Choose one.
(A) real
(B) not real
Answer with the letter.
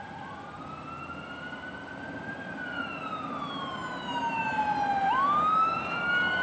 A